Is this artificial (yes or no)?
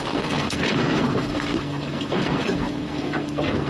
yes